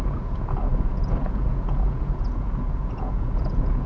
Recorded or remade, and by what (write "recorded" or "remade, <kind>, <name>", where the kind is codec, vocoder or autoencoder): remade, vocoder, Vocos